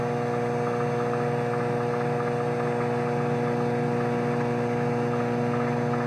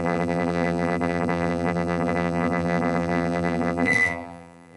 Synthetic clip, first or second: second